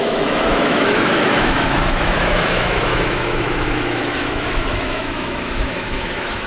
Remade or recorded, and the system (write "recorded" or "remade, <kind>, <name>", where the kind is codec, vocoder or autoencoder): remade, autoencoder, DAC-VAE